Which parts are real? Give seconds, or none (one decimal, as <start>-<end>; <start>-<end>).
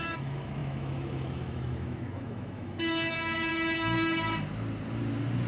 3.5-5.5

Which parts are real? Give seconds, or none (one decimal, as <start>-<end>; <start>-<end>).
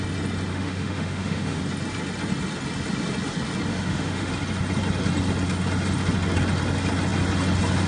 0.0-0.5; 1.6-3.7; 4.3-7.9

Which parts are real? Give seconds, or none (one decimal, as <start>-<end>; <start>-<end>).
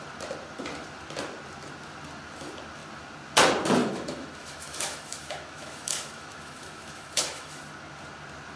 0.0-3.8; 7.6-8.6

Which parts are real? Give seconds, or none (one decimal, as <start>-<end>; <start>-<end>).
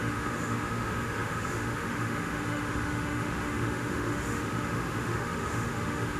none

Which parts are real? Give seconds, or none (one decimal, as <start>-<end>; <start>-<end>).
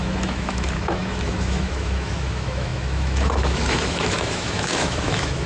none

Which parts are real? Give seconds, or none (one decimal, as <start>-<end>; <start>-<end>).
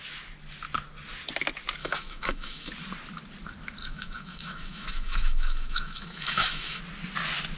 0.0-1.8; 2.7-3.8; 6.8-7.6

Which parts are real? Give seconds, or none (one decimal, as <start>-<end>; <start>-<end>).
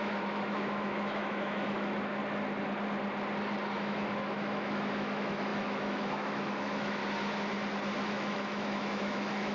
2.2-3.7; 7.0-8.1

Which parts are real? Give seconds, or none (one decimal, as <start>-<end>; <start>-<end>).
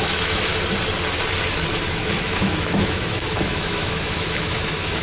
0.5-1.9